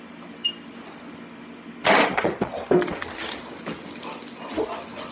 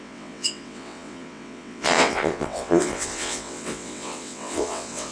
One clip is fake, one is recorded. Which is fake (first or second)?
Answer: second